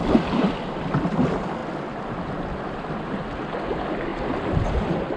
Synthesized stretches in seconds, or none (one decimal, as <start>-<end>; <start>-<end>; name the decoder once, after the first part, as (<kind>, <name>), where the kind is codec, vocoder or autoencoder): none